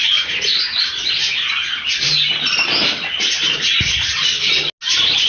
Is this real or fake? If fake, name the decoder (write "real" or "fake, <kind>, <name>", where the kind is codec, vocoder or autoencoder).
real